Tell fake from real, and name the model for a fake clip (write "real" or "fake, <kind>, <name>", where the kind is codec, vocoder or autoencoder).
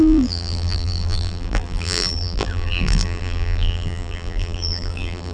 fake, vocoder, BigVGAN v2